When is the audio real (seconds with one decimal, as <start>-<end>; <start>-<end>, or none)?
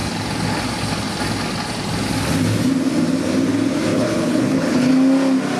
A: 0.0-3.9; 4.9-5.6